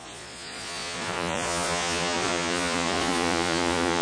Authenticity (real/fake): fake